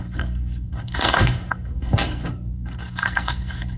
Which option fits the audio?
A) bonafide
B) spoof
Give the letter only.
B